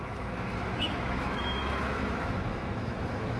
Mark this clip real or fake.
fake